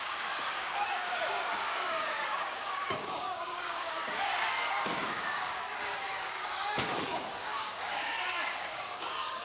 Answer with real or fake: fake